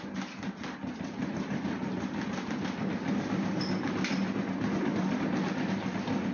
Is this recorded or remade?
recorded